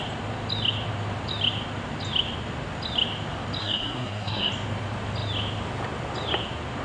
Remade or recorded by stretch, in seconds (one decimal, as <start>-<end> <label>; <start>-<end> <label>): 0.0-3.6 recorded; 3.6-4.5 remade; 4.5-6.8 recorded